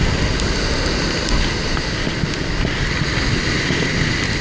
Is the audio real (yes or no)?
yes